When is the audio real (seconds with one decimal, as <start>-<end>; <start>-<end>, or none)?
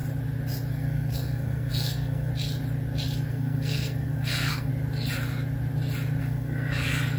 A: 0.0-0.7; 2.3-3.3; 4.7-6.2